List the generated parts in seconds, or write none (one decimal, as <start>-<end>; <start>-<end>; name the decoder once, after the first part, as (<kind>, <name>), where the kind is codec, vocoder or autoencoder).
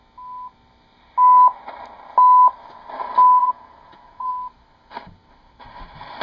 3.4-4.3 (vocoder, Vocos)